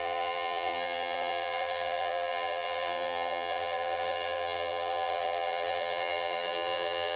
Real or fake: fake